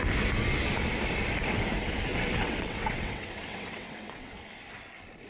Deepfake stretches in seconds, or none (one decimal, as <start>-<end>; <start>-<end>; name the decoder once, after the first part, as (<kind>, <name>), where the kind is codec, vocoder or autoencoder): 2.1-4.3 (vocoder, WaveNeXt)